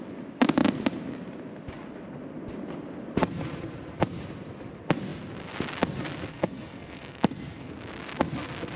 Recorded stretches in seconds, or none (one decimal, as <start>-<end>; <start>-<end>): 0.0-6.3; 7.7-8.8